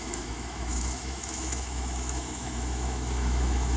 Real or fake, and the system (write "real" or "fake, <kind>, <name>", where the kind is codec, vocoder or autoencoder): fake, autoencoder, DAC-VAE